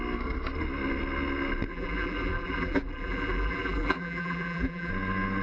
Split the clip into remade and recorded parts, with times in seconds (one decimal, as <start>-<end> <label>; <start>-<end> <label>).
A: 0.0-1.7 recorded; 1.7-4.9 remade; 4.9-5.4 recorded